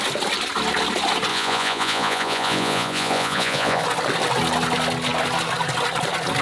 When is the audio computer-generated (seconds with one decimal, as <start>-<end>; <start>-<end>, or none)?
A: 1.3-3.8